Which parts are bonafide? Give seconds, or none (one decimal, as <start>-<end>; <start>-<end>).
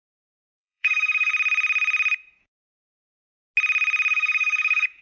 1.3-2.4; 3.3-4.1